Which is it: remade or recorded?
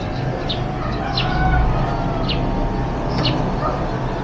recorded